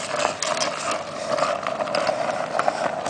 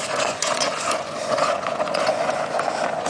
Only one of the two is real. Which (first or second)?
first